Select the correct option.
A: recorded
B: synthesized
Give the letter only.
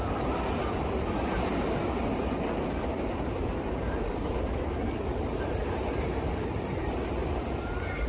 B